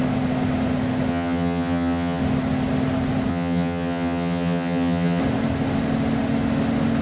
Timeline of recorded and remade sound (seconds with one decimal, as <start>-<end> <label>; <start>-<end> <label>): 0.0-1.1 recorded; 1.1-2.2 remade; 2.2-3.3 recorded; 3.3-5.2 remade; 5.2-7.0 recorded